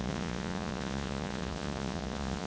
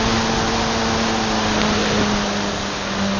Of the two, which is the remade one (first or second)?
first